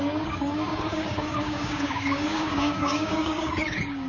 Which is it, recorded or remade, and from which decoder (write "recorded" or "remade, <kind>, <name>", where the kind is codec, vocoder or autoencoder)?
remade, codec, DAC